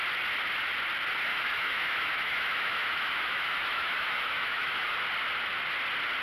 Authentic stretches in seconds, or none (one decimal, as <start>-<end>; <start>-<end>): 0.0-1.3; 5.0-6.2